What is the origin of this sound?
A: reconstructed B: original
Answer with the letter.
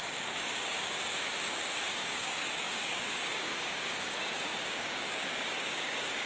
A